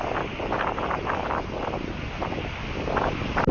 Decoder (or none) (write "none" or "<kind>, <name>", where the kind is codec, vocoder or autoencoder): none